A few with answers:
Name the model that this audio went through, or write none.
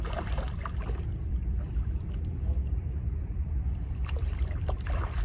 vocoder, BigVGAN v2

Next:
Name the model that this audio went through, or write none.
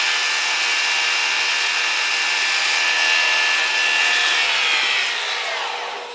none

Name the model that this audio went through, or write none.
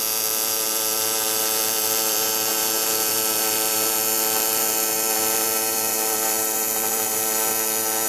vocoder, BigVGAN v2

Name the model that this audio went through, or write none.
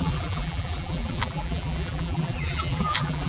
vocoder, BigVGAN v2